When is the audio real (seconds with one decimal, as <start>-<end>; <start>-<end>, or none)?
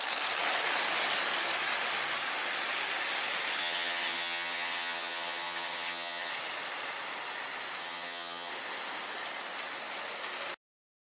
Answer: 0.0-3.6; 6.3-7.8; 8.5-11.0